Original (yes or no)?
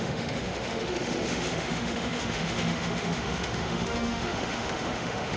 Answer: no